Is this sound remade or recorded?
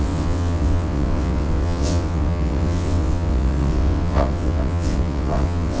remade